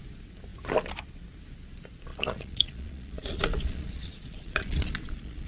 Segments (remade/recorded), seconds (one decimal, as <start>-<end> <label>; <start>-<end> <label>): 0.0-2.1 recorded; 2.1-5.5 remade